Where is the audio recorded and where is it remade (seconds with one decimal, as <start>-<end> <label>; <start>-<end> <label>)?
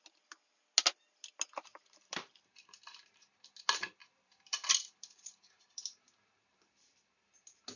0.0-1.7 recorded; 1.7-2.3 remade; 2.3-4.0 recorded; 4.0-7.1 remade; 7.1-7.8 recorded